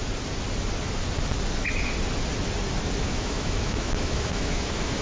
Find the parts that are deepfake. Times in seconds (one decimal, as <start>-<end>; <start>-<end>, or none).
3.0-5.0